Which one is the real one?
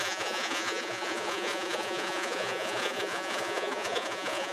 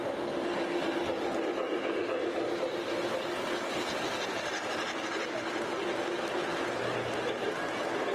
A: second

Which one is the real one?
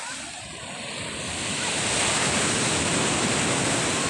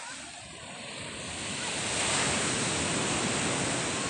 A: second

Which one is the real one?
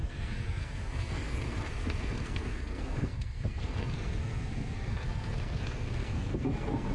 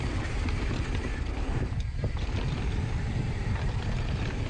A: second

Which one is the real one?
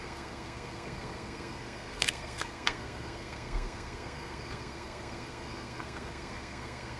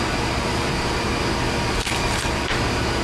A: second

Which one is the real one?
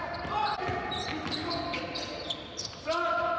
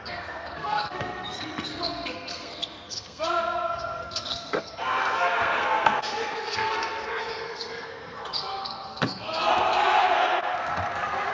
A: first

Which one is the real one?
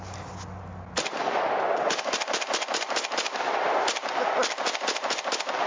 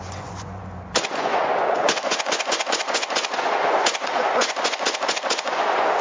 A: first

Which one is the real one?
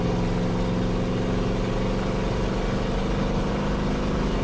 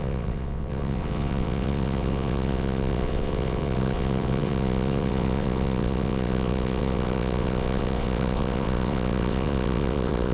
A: first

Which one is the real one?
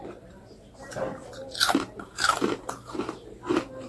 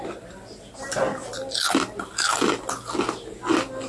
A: second